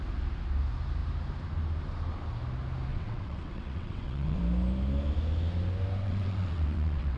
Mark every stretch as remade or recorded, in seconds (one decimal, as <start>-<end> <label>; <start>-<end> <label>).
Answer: 0.0-2.9 recorded; 2.9-4.4 remade; 4.4-6.0 recorded; 6.0-7.2 remade